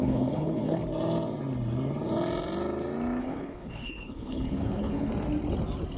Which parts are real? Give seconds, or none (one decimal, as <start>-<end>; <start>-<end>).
0.8-3.2; 5.1-6.0